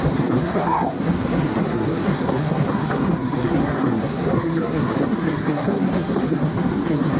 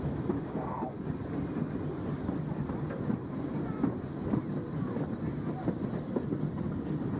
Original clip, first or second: second